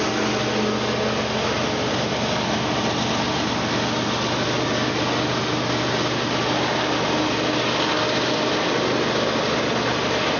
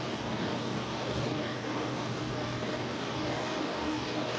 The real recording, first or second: first